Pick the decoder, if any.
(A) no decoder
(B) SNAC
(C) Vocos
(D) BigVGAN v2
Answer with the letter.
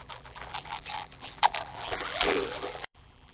D